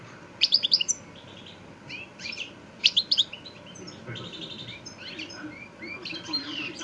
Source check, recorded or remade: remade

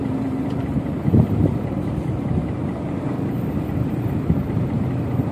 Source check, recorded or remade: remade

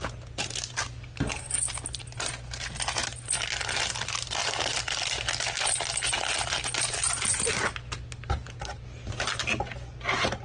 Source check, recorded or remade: recorded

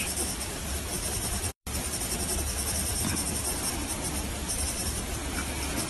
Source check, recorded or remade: remade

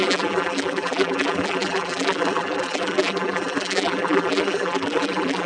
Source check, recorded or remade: remade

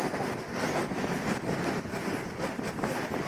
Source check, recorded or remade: recorded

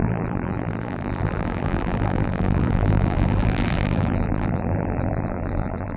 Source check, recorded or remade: remade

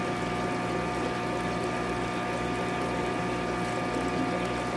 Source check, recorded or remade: recorded